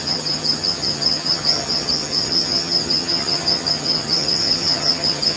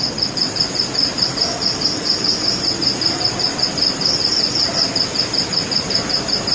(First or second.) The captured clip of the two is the second